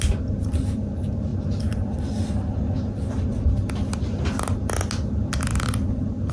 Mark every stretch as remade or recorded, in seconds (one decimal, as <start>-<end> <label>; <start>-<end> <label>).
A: 0.0-1.3 recorded; 1.3-2.5 remade; 2.5-6.3 recorded